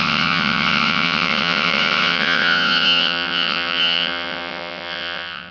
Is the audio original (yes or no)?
no